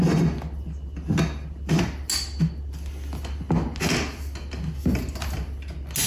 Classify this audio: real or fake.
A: real